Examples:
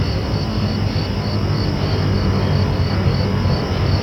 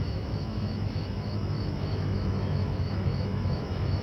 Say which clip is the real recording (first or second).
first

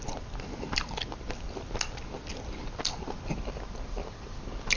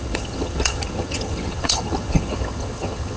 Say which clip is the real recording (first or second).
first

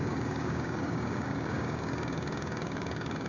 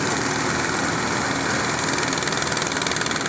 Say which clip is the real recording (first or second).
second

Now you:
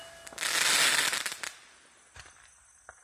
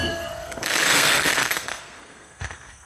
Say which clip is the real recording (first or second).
first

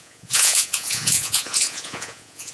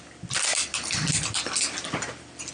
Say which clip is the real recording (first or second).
second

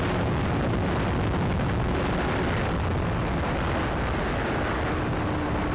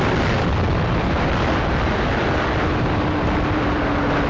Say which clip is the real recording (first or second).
first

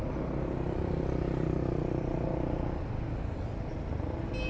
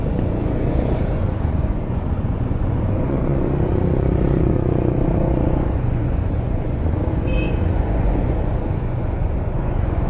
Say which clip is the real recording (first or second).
first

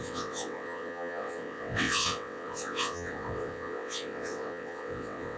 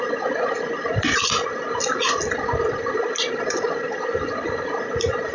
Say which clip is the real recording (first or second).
second